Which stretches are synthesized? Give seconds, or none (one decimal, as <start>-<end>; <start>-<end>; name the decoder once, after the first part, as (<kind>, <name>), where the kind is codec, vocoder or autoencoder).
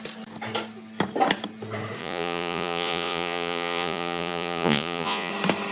2.0-5.3 (vocoder, Vocos)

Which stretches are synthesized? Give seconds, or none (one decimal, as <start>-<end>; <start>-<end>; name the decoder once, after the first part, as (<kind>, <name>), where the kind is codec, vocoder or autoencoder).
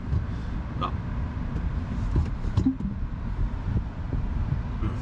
none